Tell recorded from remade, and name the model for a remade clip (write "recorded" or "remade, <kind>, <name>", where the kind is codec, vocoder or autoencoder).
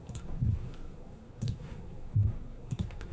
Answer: remade, codec, SNAC